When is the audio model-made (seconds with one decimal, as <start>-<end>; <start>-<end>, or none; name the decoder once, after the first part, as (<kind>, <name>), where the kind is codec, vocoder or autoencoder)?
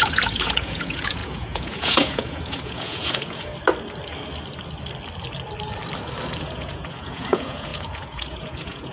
0.0-3.5 (vocoder, Vocos); 6.4-8.9